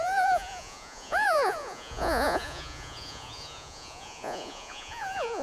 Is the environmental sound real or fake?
fake